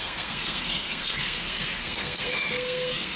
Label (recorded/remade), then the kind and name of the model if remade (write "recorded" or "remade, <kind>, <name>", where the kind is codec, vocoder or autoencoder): remade, codec, SNAC